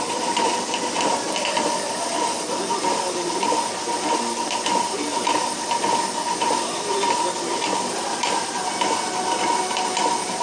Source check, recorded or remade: recorded